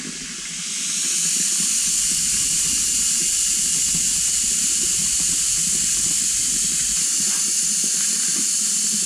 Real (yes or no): yes